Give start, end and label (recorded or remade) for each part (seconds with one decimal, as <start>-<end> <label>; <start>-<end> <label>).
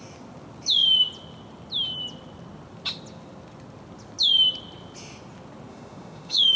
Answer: 0.0-5.7 recorded; 5.7-6.6 remade